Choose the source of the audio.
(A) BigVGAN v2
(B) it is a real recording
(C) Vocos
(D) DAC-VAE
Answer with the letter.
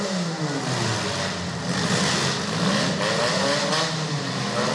B